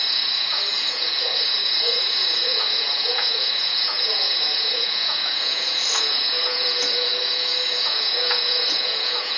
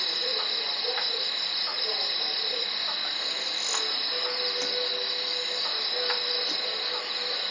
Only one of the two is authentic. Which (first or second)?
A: second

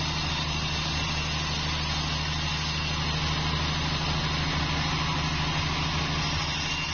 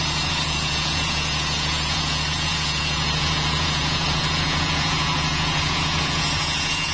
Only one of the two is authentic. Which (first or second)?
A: first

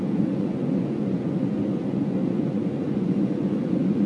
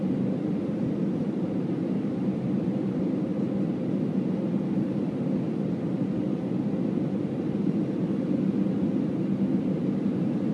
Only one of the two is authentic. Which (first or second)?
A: second